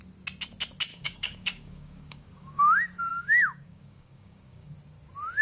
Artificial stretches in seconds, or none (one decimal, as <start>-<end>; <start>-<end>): 0.9-2.6; 3.1-4.7